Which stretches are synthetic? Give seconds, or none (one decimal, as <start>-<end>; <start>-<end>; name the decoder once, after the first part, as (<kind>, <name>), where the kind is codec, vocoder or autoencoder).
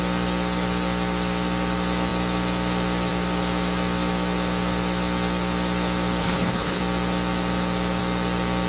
6.2-6.8 (codec, HILCodec)